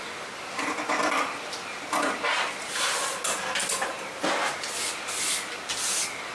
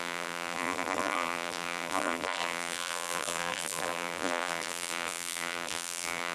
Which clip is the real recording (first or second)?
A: first